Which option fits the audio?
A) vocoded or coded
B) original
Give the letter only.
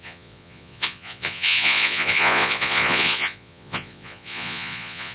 A